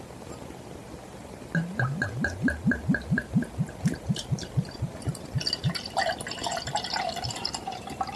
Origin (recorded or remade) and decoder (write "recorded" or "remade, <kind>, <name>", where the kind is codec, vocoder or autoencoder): remade, vocoder, BigVGAN v2